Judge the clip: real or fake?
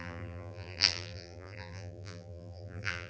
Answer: fake